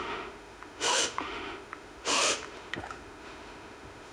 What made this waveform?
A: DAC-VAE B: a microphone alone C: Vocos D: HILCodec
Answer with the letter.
A